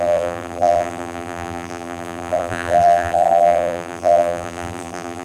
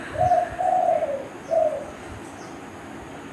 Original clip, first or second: second